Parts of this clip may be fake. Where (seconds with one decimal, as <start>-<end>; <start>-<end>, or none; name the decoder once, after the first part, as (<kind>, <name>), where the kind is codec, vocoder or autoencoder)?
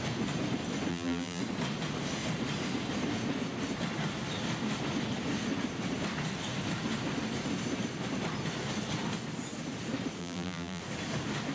0.9-1.4 (vocoder, BigVGAN v2); 10.2-10.8